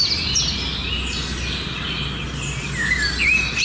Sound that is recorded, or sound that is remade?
recorded